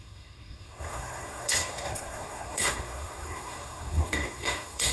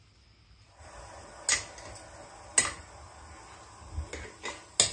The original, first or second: second